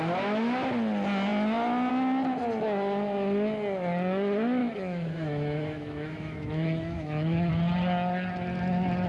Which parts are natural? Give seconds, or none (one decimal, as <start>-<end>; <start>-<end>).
0.0-4.6; 7.5-9.1